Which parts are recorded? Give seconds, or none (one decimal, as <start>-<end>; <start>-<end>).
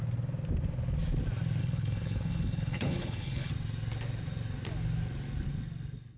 0.0-1.6; 3.5-6.2